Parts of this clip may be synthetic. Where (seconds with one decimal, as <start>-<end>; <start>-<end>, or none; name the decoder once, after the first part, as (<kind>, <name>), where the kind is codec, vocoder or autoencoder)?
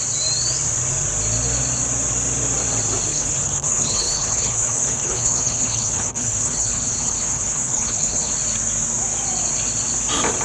3.1-8.3 (codec, HILCodec)